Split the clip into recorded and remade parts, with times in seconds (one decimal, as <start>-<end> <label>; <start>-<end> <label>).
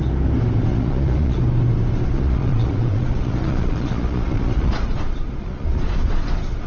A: 0.0-0.7 recorded; 0.7-1.4 remade; 1.4-2.1 recorded; 2.1-6.1 remade; 6.1-6.7 recorded